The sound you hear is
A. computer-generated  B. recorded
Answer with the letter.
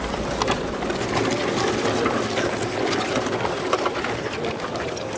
B